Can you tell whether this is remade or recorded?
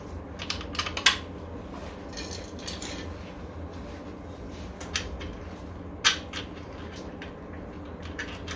recorded